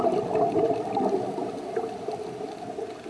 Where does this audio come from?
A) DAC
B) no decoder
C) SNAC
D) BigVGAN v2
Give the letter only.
B